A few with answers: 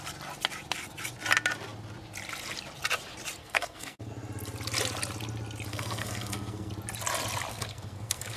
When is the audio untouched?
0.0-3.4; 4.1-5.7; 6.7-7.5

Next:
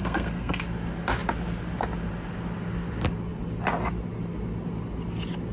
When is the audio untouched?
0.6-5.5

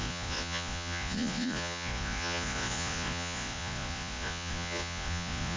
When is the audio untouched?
none

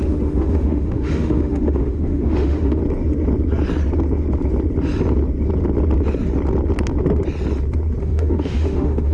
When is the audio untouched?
2.8-8.0